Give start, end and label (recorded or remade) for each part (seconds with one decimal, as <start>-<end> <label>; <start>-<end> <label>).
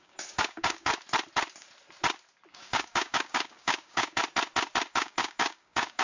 0.0-0.9 remade; 0.9-2.5 recorded; 2.5-4.2 remade; 4.2-4.9 recorded; 4.9-6.0 remade